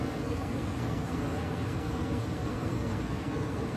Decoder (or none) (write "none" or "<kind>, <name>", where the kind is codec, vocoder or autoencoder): codec, SNAC